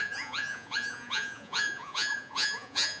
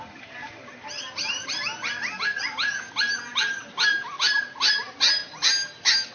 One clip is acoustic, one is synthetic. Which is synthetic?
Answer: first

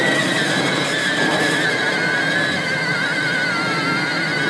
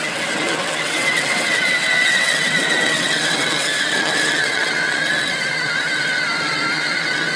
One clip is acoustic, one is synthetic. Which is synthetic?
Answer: second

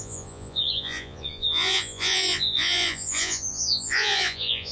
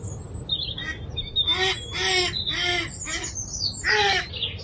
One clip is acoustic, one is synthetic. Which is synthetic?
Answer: first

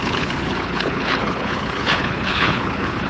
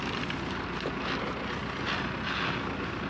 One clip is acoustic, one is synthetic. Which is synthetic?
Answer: first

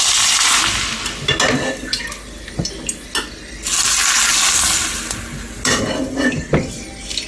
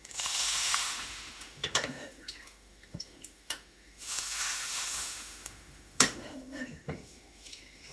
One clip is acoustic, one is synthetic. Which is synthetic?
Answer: second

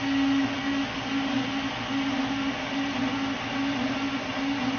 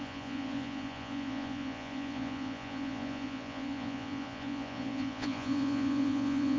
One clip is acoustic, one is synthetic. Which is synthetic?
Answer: second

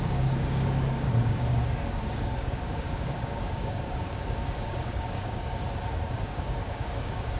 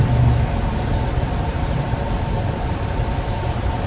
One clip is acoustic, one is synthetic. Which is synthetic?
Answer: first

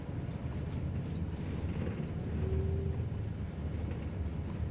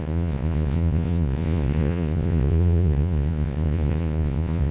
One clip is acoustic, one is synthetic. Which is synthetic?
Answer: second